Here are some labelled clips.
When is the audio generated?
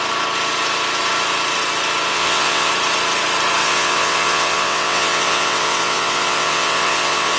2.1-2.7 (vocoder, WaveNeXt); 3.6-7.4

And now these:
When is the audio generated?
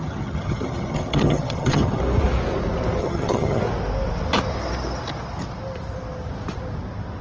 0.0-2.0 (vocoder, HiFi-GAN); 3.0-3.6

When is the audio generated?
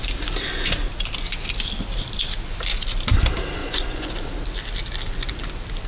3.6-4.1 (vocoder, Vocos)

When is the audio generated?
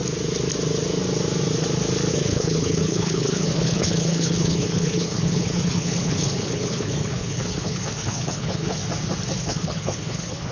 2.1-8.8 (codec, HILCodec); 9.4-10.5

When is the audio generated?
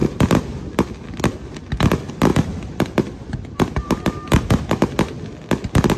none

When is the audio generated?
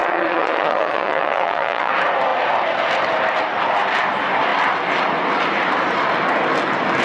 0.0-1.9 (vocoder, Vocos)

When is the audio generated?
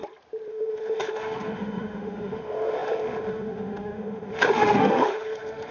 0.5-5.7 (autoencoder, DAC-VAE)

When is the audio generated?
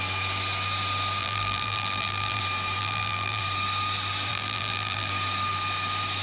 1.2-2.4 (vocoder, BigVGAN v2); 2.8-3.4; 4.3-5.1